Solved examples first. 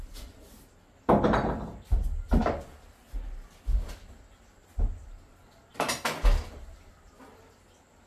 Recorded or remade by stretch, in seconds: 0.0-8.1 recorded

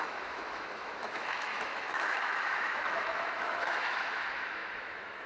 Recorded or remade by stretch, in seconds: 0.0-5.3 remade

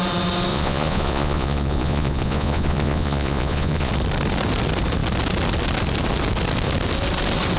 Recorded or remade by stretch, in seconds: 0.0-0.5 recorded; 0.5-3.9 remade; 3.9-7.6 recorded

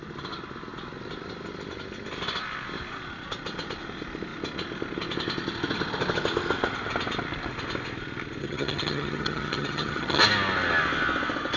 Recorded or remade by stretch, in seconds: 0.0-8.4 recorded; 8.4-10.2 remade; 10.2-11.6 recorded

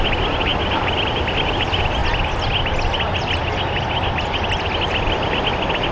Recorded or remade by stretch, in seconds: 0.0-5.9 recorded

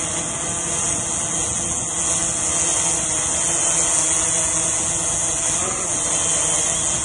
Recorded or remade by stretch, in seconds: 0.0-7.0 recorded